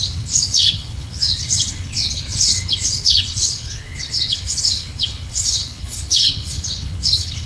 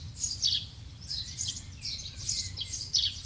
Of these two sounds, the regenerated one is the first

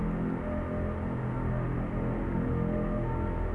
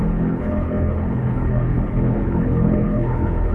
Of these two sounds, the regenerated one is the second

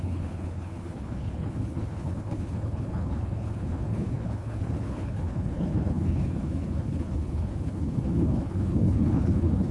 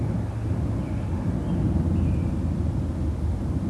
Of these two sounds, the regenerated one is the first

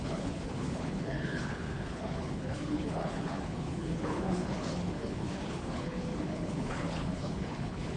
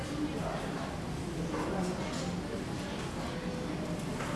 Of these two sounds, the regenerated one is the first